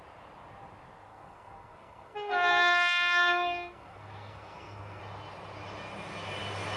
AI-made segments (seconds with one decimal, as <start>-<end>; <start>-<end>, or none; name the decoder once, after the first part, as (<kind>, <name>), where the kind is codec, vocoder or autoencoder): 1.1-5.0 (codec, SNAC)